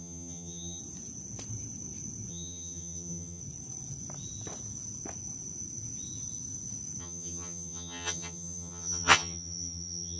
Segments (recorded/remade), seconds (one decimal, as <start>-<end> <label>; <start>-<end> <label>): 0.0-0.8 remade; 0.8-2.3 recorded; 2.3-3.4 remade; 3.4-7.0 recorded; 7.0-10.2 remade